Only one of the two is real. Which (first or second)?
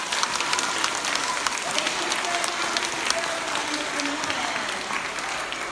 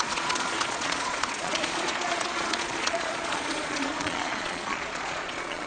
first